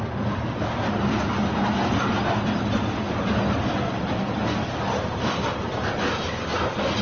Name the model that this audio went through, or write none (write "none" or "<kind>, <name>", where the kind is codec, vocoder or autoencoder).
none